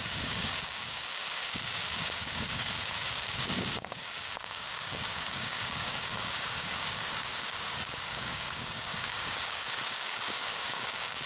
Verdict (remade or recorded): remade